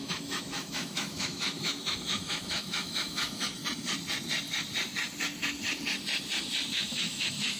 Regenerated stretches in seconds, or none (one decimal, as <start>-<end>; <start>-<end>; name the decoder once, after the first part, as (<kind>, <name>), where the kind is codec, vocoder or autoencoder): 0.0-3.6 (autoencoder, DAC-VAE); 6.7-7.6